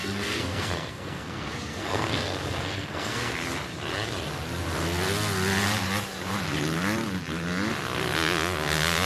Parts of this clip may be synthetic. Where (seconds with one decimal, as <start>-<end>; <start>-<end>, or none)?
0.0-3.3